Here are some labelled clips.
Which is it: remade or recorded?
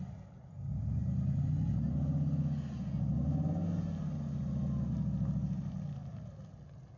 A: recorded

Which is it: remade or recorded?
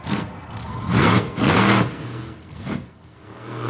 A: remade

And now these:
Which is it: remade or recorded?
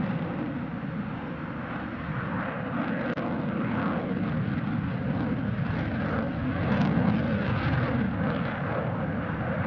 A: recorded